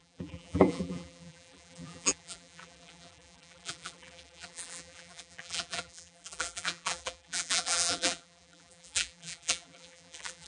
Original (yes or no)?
no